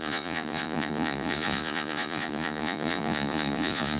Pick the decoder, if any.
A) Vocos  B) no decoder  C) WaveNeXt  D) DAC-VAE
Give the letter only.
A